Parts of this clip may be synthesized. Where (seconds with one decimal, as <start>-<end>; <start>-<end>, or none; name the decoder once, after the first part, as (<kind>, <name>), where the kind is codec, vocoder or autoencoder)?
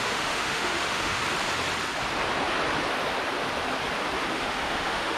0.0-1.2 (autoencoder, DAC-VAE); 4.3-5.2